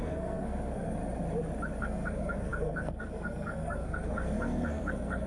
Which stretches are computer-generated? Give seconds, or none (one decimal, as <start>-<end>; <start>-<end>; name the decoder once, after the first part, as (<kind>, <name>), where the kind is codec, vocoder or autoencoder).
0.0-1.0 (codec, SNAC); 1.8-5.3